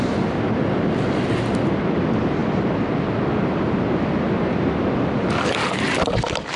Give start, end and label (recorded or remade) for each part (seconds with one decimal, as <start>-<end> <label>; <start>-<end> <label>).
0.0-6.6 recorded